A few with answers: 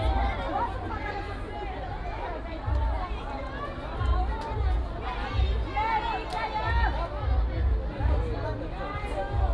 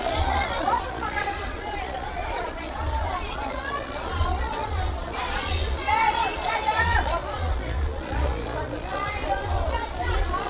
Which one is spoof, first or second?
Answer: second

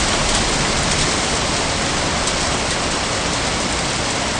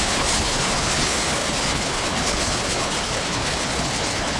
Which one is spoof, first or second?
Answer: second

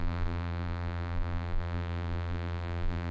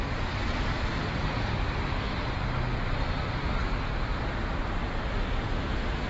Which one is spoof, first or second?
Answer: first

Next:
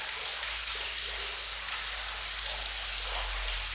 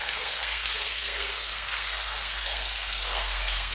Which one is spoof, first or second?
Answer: second